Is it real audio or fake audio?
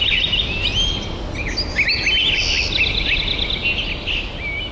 real